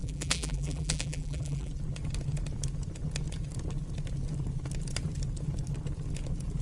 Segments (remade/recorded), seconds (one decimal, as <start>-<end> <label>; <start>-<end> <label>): 0.0-1.7 remade; 1.7-6.6 recorded